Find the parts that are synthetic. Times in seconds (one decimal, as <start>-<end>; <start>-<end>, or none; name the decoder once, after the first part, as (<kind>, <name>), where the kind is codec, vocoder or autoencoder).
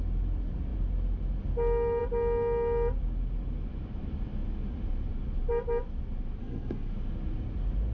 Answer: 6.4-6.9 (codec, SNAC)